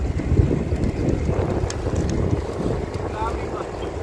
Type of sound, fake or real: real